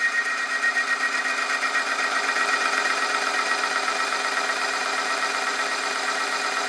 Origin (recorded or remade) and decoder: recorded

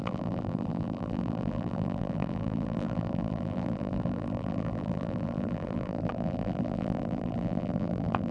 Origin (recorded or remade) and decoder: remade, vocoder, BigVGAN v2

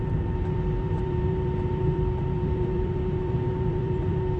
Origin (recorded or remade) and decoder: remade, vocoder, BigVGAN v2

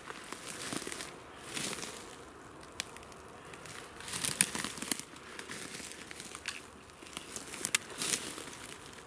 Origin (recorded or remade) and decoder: recorded